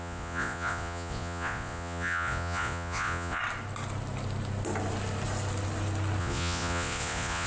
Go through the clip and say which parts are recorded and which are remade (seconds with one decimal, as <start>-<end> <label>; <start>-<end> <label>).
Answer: 0.0-3.4 remade; 3.4-6.2 recorded; 6.2-7.5 remade

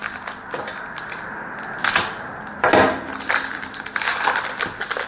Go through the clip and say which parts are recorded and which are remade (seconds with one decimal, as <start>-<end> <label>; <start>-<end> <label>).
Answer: 0.0-5.1 recorded

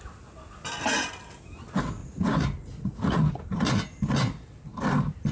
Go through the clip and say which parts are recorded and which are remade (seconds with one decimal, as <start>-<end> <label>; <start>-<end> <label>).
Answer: 0.0-2.0 recorded; 2.0-3.6 remade; 3.6-5.3 recorded

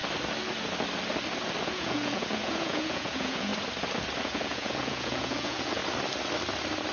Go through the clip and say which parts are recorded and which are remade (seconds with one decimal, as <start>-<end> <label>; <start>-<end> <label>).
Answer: 0.0-1.6 recorded; 1.6-3.5 remade; 3.5-4.2 recorded; 4.2-5.8 remade; 5.8-6.9 recorded

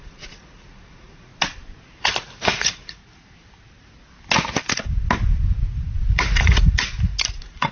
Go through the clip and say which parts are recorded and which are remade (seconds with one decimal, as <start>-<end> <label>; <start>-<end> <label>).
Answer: 0.0-1.3 remade; 1.3-2.0 recorded; 2.0-3.0 remade; 3.0-6.1 recorded; 6.1-7.7 remade

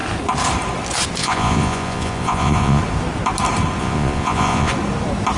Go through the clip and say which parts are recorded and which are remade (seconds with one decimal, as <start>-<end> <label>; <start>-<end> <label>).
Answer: 0.0-1.2 recorded; 1.2-2.8 remade; 2.8-3.8 recorded; 3.8-4.7 remade; 4.7-5.4 recorded